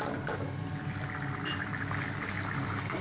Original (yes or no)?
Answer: yes